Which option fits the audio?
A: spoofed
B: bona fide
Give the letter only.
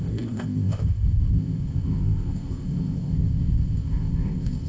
A